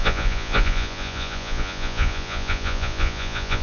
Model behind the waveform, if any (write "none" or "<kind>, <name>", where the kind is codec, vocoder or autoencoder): vocoder, Vocos